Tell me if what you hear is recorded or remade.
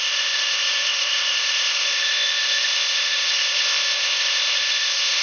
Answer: remade